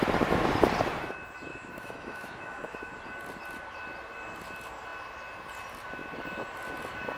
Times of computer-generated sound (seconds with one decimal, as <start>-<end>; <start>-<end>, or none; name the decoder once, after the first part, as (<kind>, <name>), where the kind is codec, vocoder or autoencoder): 1.5-2.9 (autoencoder, DAC-VAE)